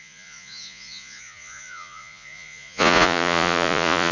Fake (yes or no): yes